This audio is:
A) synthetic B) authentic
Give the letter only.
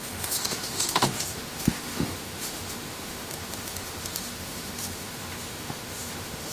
A